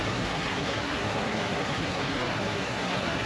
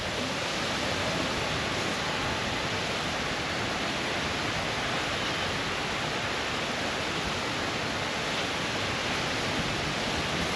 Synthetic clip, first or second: first